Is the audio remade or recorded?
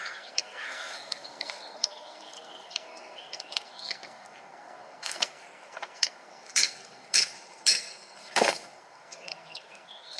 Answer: remade